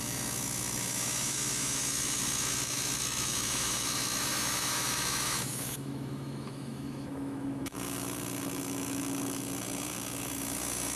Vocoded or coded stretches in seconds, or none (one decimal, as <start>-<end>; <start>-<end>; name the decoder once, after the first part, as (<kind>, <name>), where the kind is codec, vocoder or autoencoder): 0.0-11.0 (autoencoder, DAC-VAE)